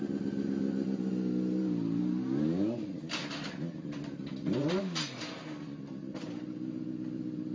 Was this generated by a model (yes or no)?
no